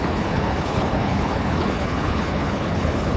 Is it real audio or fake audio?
fake